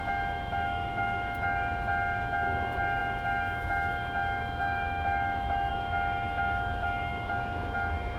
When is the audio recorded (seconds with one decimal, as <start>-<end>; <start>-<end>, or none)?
none